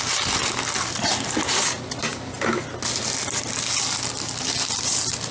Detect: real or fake real